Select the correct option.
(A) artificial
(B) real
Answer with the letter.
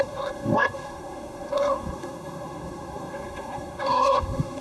A